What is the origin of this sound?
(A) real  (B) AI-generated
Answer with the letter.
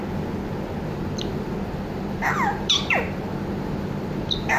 A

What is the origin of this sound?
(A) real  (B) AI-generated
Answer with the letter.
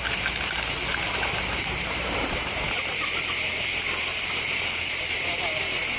B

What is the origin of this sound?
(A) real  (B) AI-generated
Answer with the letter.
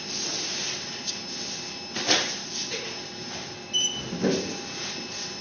A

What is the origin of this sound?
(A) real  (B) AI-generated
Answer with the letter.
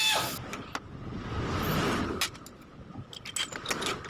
A